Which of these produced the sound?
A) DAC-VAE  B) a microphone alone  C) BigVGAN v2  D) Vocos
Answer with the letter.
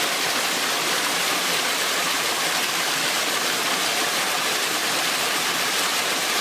B